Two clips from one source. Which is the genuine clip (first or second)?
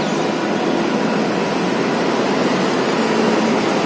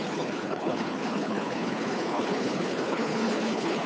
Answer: first